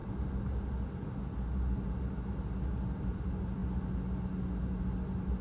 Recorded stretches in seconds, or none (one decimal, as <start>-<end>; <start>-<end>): 0.0-5.4